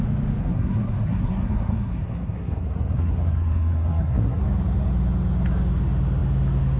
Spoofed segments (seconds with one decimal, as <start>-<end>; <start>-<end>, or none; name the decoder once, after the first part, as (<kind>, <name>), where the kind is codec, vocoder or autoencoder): 0.4-4.4 (codec, SNAC)